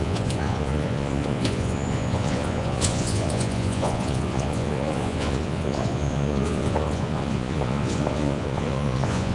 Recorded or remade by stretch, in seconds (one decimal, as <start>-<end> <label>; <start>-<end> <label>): 0.0-9.3 remade